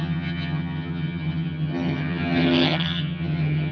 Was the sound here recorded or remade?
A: remade